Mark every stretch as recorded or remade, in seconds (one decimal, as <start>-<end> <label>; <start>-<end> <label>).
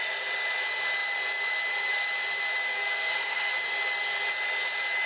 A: 0.0-2.6 recorded; 2.6-3.5 remade; 3.5-5.1 recorded